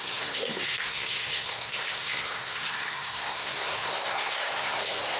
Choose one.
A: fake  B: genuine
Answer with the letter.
A